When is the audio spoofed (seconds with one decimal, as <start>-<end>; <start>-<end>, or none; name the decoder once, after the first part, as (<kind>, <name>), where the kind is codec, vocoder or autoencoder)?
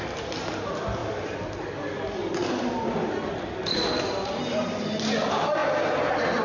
none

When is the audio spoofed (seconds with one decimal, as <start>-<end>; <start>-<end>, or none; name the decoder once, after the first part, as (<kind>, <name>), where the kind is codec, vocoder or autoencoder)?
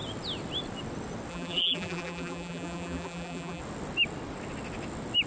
1.3-3.6 (vocoder, BigVGAN v2)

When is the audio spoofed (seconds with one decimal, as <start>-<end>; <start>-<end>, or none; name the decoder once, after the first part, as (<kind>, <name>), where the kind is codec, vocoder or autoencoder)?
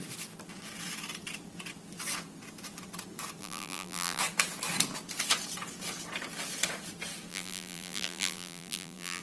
3.4-4.2 (vocoder, BigVGAN v2); 7.3-9.2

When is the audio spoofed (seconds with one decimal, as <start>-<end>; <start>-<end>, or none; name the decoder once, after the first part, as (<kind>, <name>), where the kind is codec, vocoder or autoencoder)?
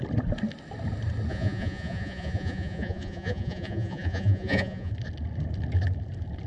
1.3-4.9 (vocoder, Vocos)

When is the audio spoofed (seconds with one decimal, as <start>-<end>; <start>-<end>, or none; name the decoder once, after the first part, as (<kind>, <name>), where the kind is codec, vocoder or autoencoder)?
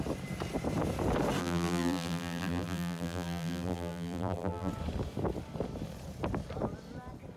1.4-4.7 (vocoder, BigVGAN v2)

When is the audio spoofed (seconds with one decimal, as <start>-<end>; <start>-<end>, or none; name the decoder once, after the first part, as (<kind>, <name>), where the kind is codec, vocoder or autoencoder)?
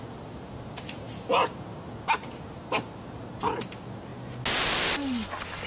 none